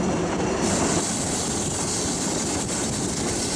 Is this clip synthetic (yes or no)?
no